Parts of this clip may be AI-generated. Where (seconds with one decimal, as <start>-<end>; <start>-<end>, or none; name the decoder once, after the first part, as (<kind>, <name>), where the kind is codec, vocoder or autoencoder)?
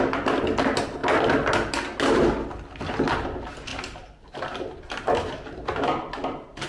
none